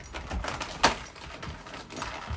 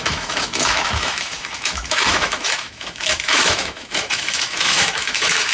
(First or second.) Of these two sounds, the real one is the first